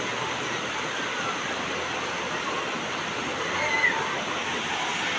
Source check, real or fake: real